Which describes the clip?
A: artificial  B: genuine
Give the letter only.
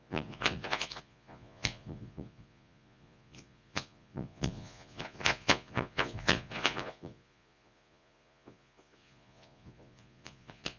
A